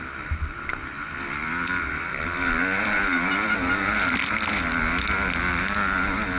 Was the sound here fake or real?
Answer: real